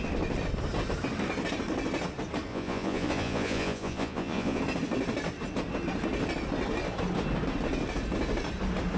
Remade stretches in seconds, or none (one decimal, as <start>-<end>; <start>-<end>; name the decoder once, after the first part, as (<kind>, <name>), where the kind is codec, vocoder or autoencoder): 2.5-4.6 (vocoder, Vocos)